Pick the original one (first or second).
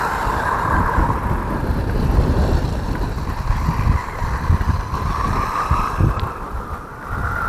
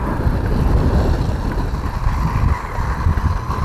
second